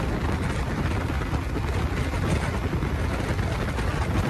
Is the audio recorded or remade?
recorded